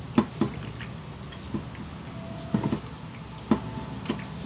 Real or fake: real